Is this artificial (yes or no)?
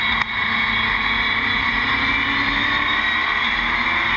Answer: no